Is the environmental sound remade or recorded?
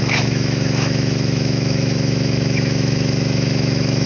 remade